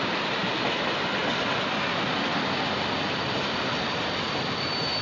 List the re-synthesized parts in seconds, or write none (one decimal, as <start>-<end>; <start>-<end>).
none